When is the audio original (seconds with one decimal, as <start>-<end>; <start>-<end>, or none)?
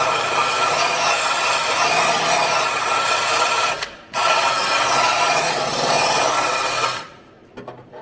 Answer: 0.0-8.0